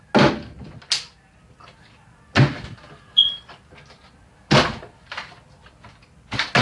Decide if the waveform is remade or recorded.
recorded